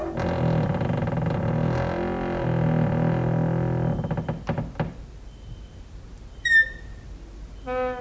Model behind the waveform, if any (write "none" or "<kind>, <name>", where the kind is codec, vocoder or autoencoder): none